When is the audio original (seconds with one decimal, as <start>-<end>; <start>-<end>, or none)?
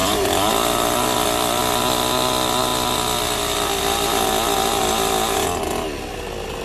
1.8-6.6